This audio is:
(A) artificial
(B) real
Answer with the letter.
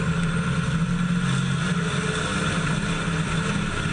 B